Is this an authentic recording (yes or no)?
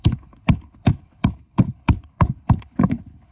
no